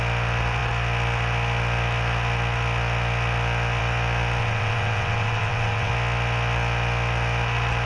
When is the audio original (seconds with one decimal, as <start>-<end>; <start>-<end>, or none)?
0.0-4.4; 5.9-7.9